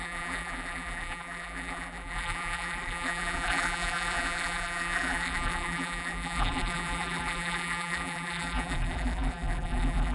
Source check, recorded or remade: remade